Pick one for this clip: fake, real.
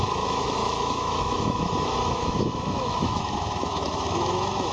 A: fake